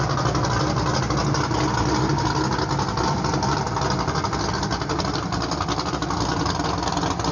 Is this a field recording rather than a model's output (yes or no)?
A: yes